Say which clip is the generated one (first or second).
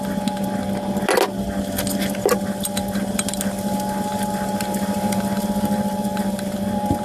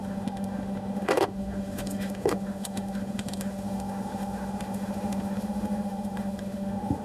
second